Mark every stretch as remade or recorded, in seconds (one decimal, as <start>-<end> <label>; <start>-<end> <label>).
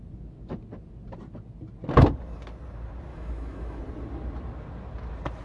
0.0-3.1 recorded; 3.1-3.8 remade; 3.8-5.4 recorded